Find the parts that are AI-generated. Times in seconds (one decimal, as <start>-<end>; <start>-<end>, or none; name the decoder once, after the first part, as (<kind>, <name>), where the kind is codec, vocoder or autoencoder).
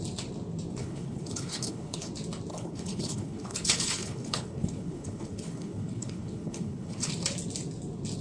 0.8-2.1 (codec, HILCodec); 2.5-7.1